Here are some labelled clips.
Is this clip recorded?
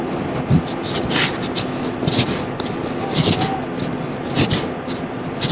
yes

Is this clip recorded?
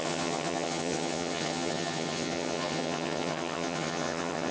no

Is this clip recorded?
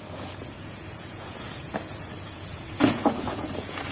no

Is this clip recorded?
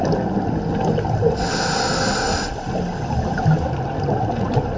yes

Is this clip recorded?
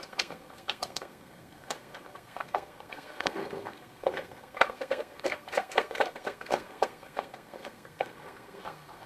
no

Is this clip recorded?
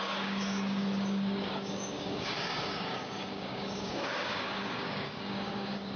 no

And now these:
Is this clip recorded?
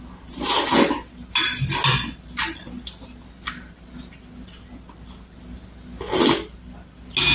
yes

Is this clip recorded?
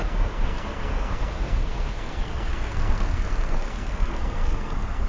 no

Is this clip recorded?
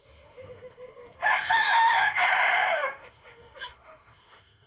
no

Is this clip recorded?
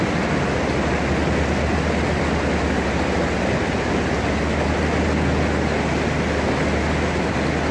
yes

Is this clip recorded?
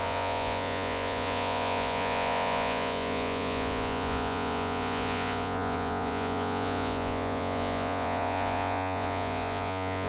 no